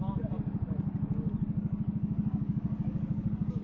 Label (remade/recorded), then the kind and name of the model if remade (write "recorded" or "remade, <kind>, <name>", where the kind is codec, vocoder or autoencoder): remade, codec, DAC